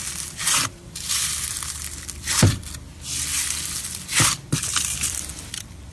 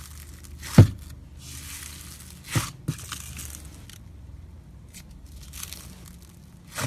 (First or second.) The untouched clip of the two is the second